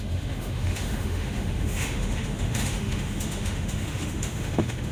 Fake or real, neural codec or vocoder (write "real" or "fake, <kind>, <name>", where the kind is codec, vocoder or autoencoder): fake, autoencoder, DAC-VAE